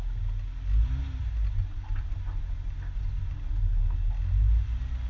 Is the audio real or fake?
real